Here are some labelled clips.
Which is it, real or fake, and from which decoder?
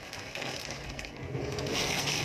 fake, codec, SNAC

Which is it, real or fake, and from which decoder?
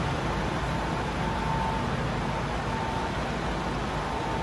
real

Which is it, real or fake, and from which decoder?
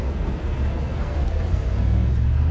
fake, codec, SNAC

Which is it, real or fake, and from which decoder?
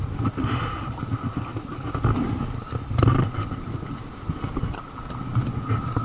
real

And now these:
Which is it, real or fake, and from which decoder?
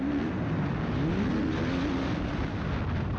real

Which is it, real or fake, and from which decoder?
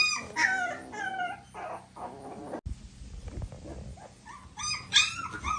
real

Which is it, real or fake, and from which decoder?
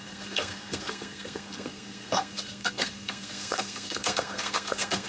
fake, codec, SNAC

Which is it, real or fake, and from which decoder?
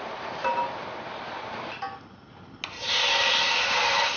real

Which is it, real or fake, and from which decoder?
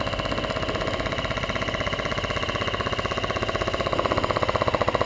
real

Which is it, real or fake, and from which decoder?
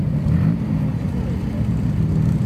real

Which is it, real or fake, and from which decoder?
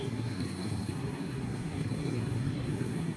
fake, codec, SNAC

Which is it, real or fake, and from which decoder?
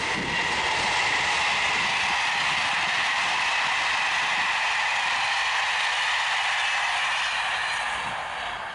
real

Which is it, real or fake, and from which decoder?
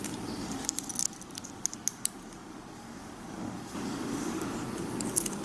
real